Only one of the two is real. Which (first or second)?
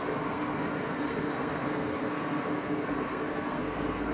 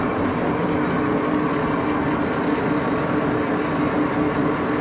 second